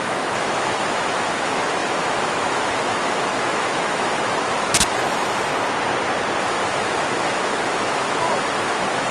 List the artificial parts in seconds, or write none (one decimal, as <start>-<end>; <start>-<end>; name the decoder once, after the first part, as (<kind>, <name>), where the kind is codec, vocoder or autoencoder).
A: 0.0-5.5 (autoencoder, DAC-VAE); 6.4-9.1